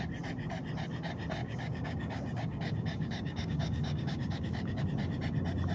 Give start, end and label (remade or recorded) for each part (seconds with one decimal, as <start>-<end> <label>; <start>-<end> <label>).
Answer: 0.0-1.4 recorded; 1.4-4.8 remade; 4.8-5.7 recorded